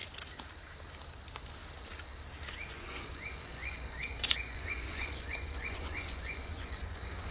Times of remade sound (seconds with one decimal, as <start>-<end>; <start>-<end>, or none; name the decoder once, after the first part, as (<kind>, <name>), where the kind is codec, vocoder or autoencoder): 2.7-7.3 (vocoder, Vocos)